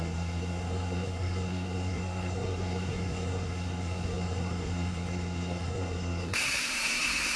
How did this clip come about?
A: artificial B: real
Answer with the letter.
A